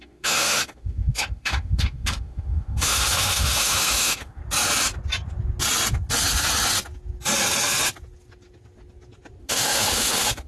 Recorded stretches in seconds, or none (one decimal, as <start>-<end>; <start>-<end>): 4.4-9.4